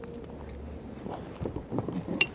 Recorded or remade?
remade